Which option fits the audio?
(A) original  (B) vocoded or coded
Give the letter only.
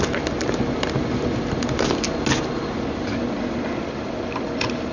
A